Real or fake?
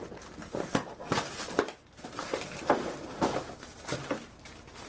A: fake